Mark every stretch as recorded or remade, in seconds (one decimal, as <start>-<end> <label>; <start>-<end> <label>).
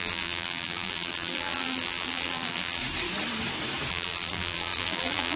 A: 0.0-2.8 remade; 2.8-3.9 recorded; 3.9-5.4 remade